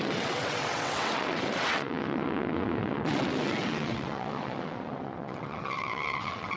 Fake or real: fake